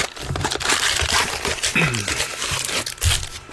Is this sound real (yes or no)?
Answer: yes